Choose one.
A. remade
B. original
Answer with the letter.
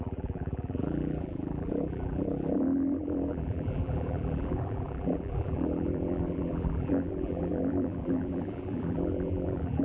A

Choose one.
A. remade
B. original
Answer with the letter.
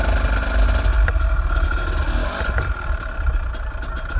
B